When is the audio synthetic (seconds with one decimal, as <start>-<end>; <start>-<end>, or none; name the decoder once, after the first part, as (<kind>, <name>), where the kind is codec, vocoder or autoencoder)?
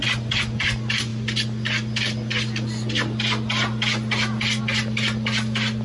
none